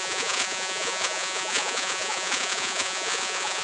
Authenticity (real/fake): fake